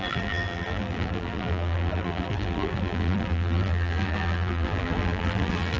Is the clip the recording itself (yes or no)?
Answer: no